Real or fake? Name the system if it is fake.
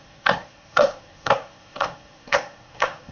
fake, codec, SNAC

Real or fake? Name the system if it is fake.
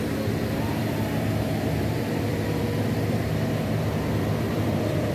fake, vocoder, BigVGAN v2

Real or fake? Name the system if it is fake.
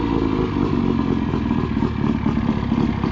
real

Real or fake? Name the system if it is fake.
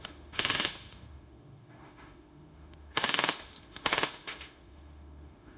fake, autoencoder, DAC-VAE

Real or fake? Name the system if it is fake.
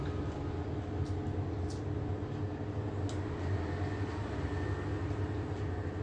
real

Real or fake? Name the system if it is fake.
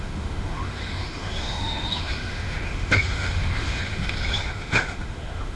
fake, autoencoder, DAC-VAE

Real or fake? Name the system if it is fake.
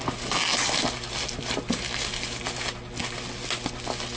real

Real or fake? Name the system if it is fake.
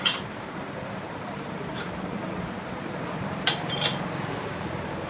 fake, vocoder, BigVGAN v2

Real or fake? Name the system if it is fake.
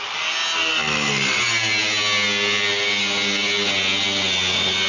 real